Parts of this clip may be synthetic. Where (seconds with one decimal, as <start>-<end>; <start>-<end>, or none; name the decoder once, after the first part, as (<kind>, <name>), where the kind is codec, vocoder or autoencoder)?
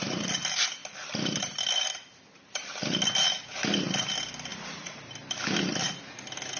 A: 0.8-3.0 (vocoder, BigVGAN v2); 4.5-6.0